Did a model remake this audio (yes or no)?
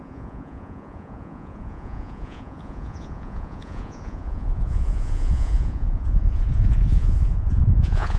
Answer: yes